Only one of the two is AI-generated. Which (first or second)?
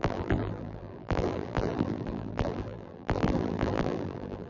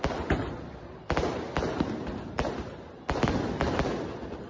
first